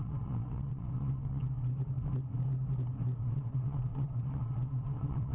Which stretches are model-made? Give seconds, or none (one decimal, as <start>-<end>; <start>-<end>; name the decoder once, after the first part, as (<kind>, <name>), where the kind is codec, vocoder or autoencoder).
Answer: 0.0-1.4 (vocoder, WaveNeXt); 3.2-5.3